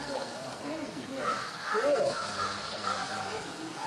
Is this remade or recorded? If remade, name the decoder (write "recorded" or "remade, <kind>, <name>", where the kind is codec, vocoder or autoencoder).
remade, codec, SNAC